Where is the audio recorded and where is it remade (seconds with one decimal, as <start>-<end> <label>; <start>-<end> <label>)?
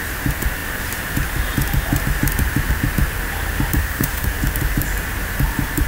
0.0-3.8 recorded; 3.8-4.3 remade; 4.3-5.9 recorded